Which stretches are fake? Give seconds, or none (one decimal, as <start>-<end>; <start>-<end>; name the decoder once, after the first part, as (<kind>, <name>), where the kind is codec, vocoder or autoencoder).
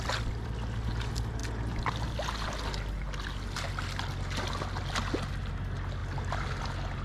none